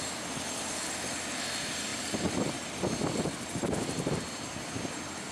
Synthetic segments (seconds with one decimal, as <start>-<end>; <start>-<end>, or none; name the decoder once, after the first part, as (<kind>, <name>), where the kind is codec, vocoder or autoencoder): 1.9-4.2 (vocoder, BigVGAN v2)

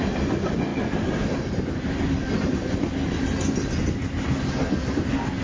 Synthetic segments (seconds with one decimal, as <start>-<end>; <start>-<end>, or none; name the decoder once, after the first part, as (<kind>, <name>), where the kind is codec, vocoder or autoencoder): none

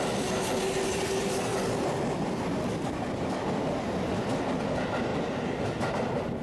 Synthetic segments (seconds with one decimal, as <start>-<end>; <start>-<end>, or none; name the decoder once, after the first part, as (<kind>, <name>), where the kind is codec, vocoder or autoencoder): none

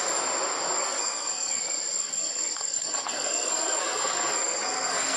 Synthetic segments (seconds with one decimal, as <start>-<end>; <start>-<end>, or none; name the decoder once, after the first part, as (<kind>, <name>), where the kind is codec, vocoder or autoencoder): 0.8-1.6 (codec, SNAC); 2.0-5.2

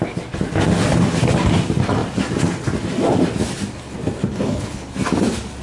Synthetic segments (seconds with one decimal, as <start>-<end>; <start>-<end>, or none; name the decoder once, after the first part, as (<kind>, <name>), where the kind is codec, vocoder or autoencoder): 4.2-4.9 (codec, HILCodec)

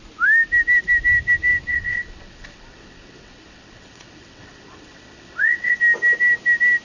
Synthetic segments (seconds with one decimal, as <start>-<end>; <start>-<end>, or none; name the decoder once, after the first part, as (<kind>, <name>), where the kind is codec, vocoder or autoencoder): 1.7-5.8 (vocoder, WaveNeXt)

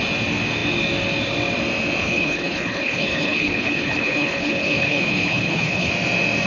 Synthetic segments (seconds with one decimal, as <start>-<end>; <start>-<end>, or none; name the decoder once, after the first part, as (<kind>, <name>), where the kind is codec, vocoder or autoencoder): 2.0-5.9 (codec, HILCodec)

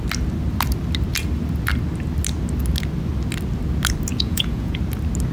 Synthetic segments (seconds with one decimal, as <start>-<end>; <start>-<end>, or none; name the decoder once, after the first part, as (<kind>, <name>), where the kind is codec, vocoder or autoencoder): 4.1-4.8 (vocoder, Vocos)